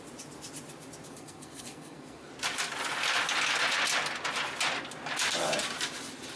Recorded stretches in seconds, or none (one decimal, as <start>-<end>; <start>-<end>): 0.0-1.1; 2.3-6.4